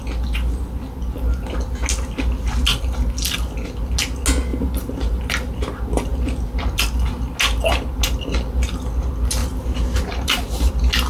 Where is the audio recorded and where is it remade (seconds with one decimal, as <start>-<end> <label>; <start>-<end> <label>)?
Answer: 0.0-4.5 recorded; 4.5-5.2 remade; 5.2-9.4 recorded; 9.4-10.7 remade; 10.7-11.1 recorded